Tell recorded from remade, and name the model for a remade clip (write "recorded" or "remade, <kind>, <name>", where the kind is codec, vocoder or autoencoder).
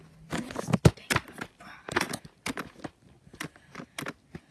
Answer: recorded